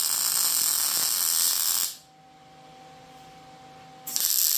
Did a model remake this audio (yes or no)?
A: no